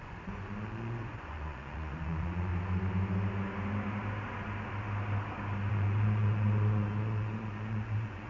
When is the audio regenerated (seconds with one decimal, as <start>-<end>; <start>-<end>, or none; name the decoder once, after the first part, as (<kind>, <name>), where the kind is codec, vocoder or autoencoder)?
0.0-2.5 (vocoder, Vocos); 5.7-8.3